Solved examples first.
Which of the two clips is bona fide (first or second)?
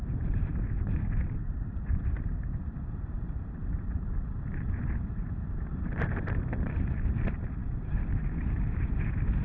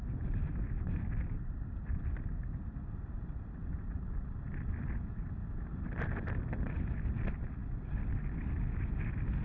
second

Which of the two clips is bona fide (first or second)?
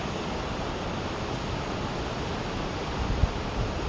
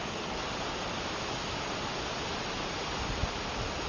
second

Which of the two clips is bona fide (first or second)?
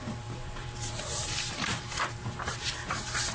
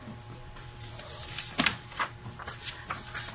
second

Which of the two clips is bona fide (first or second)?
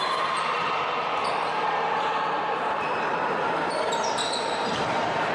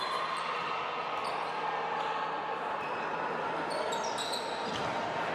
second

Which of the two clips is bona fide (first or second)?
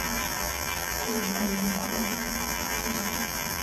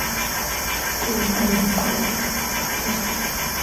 second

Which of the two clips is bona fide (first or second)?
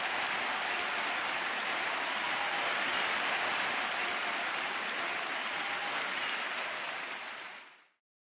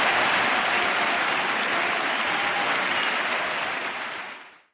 second